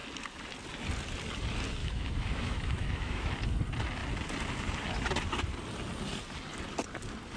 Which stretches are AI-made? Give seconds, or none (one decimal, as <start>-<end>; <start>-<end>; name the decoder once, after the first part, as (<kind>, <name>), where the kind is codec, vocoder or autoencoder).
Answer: 1.8-3.3 (autoencoder, DAC-VAE)